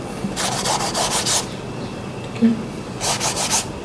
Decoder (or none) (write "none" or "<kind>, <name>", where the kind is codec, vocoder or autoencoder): none